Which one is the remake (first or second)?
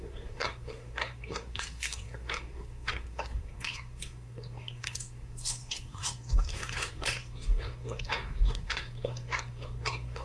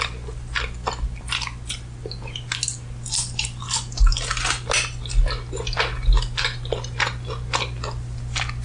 first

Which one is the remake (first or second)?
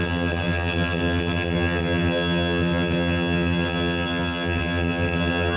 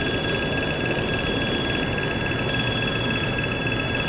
first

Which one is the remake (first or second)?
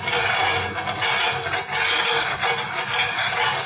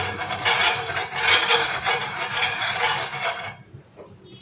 second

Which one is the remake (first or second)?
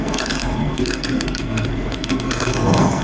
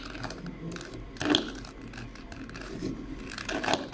first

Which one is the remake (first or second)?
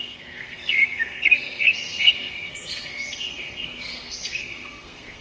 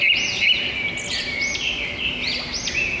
first